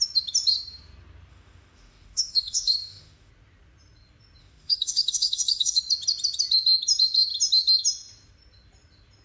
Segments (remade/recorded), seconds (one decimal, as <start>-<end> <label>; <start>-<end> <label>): 0.0-1.3 recorded; 1.3-3.3 remade; 3.3-4.4 recorded; 4.4-5.8 remade; 5.8-9.2 recorded